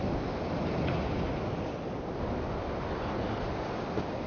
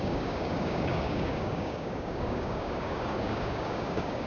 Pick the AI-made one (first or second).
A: second